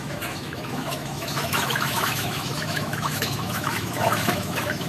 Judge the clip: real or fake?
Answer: fake